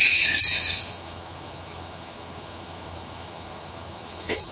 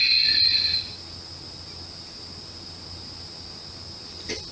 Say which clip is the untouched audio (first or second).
second